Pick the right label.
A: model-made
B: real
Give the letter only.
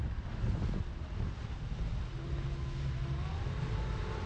B